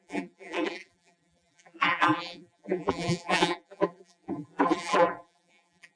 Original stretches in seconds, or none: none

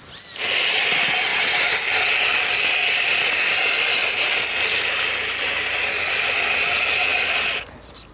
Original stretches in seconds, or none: 0.0-8.1

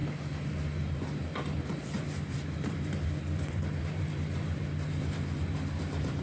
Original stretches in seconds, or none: 0.0-0.9

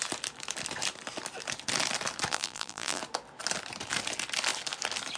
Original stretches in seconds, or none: 0.0-2.3; 3.0-5.2

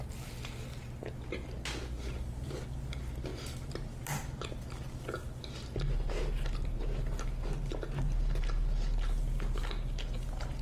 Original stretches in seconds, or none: 0.0-10.6

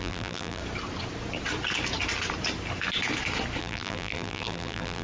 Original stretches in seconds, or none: 0.6-3.6

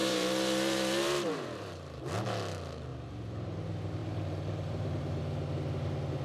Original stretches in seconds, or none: 2.0-2.9; 3.6-4.0; 5.2-6.2